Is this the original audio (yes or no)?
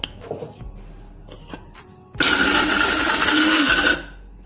yes